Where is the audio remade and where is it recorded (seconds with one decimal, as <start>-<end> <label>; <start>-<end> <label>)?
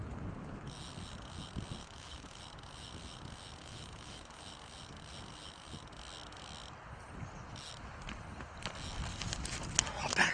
0.0-1.8 recorded; 1.8-2.4 remade; 2.4-3.6 recorded; 3.6-4.4 remade; 4.4-10.3 recorded